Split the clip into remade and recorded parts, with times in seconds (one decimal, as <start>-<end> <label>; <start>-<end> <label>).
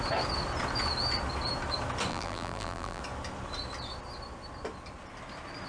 0.0-2.1 recorded; 2.1-3.0 remade; 3.0-5.7 recorded